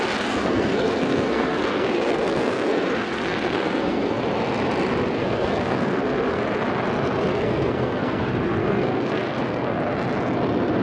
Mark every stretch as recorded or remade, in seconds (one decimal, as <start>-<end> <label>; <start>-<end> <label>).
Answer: 0.0-0.4 recorded; 0.4-4.2 remade; 4.2-5.2 recorded; 5.2-6.4 remade; 6.4-7.3 recorded; 7.3-8.2 remade; 8.2-8.6 recorded; 8.6-9.8 remade; 9.8-10.8 recorded